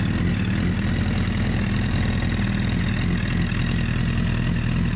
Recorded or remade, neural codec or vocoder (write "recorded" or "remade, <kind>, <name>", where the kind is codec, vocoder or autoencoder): recorded